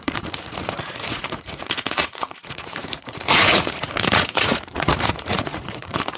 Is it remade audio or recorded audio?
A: remade